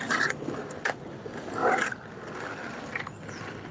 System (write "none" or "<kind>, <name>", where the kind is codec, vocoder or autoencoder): none